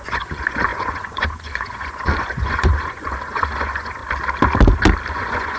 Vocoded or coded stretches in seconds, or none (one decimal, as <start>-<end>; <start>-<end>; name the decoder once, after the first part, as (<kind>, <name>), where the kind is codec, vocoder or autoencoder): 0.0-4.0 (vocoder, Vocos); 5.1-5.6